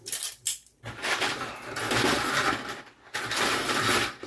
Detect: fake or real fake